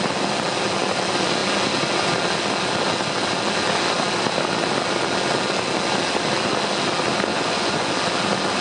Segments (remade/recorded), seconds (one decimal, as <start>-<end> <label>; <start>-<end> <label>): 0.0-7.3 recorded; 7.3-7.9 remade; 7.9-8.6 recorded